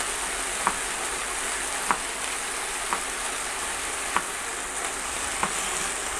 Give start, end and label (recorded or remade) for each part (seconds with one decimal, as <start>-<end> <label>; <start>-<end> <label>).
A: 0.0-6.2 recorded